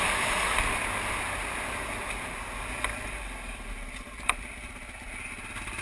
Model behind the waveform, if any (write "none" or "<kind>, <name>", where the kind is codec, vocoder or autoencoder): none